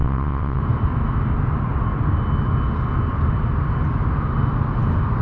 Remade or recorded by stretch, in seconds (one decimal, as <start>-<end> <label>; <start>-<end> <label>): 0.0-0.6 remade; 0.6-5.2 recorded